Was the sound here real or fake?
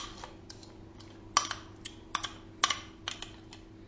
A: real